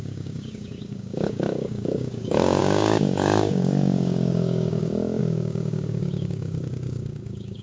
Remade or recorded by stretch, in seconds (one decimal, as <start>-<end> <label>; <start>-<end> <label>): 0.0-7.6 remade

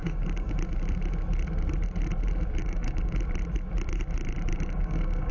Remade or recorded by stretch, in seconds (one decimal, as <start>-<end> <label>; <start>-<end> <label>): 0.0-0.5 remade; 0.5-2.6 recorded; 2.6-3.2 remade; 3.2-4.5 recorded; 4.5-5.3 remade

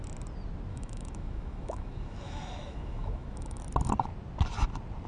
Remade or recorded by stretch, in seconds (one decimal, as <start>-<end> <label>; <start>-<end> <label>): 0.0-0.7 recorded; 0.7-3.6 remade; 3.6-5.1 recorded

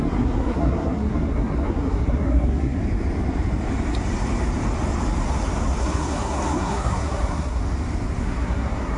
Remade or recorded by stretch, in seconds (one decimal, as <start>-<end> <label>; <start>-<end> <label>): 0.0-2.8 remade; 2.8-5.8 recorded; 5.8-7.6 remade; 7.6-8.2 recorded; 8.2-9.0 remade